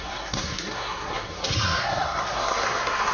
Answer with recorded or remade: remade